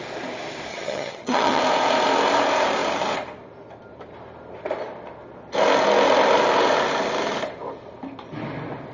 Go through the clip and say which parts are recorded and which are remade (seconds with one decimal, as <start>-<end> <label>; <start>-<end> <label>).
0.0-0.7 recorded; 0.7-1.6 remade; 1.6-8.9 recorded